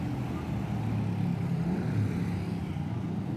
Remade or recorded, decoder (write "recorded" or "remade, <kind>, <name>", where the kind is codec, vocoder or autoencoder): recorded